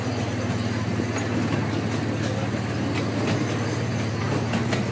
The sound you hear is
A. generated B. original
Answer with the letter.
B